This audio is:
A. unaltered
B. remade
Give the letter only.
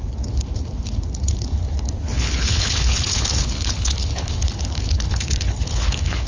B